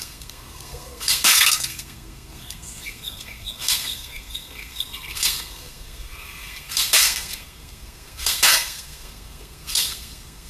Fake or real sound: fake